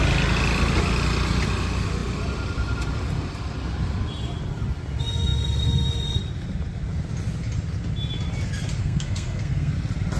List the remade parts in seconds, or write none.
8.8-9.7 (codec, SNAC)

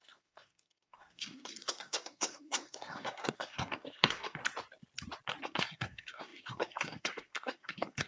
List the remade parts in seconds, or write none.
0.0-4.4 (codec, SNAC); 5.4-8.1